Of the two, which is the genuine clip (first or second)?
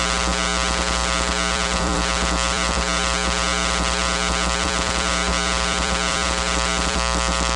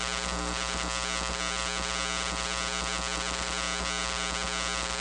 second